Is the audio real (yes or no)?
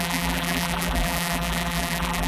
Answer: no